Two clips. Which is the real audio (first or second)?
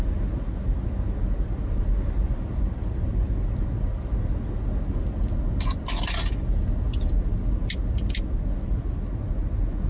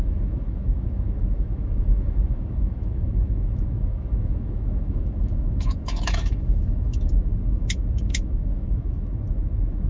first